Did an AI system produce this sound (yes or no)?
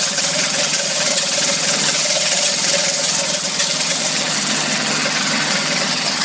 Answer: yes